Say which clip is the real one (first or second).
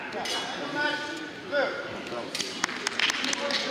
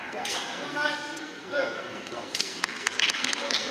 first